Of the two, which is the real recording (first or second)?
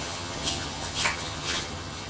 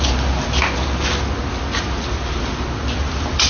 second